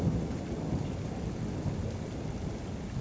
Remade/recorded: recorded